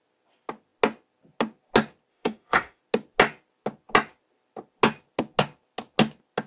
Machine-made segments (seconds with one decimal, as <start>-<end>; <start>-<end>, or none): 2.1-2.8